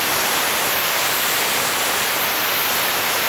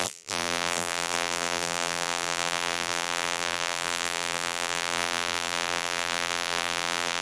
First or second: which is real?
first